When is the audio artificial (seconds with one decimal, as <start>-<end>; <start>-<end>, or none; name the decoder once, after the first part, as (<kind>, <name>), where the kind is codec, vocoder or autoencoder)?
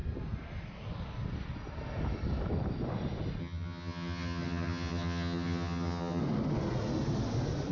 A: 3.4-6.2 (vocoder, HiFi-GAN)